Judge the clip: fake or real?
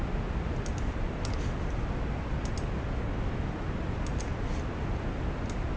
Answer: real